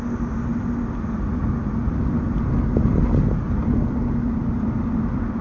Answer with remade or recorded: recorded